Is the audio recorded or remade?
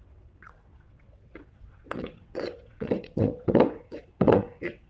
remade